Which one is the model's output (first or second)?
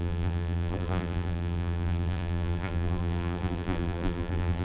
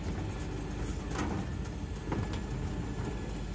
first